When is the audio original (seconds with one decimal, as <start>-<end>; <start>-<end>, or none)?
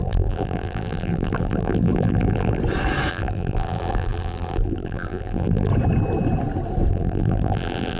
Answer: 2.6-3.1; 5.7-6.9